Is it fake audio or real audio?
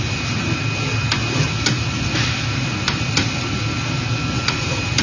real